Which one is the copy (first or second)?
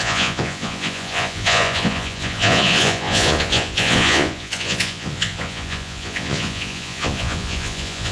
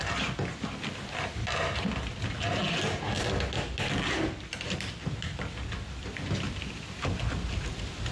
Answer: first